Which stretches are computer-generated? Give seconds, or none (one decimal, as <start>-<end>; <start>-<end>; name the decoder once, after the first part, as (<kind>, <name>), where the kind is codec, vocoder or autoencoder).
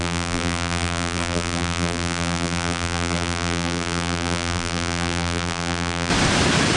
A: 0.0-6.1 (vocoder, BigVGAN v2)